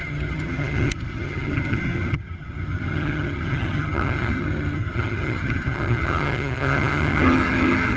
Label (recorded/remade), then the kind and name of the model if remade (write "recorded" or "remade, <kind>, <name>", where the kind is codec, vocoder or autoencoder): remade, vocoder, HiFi-GAN